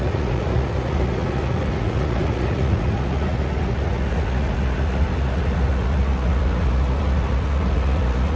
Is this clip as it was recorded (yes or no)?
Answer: no